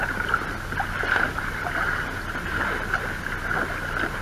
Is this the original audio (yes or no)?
yes